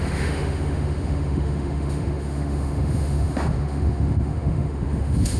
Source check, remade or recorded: remade